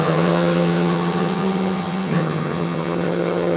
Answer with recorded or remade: remade